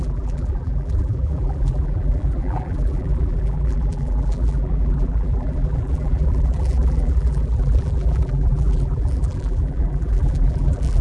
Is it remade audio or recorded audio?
remade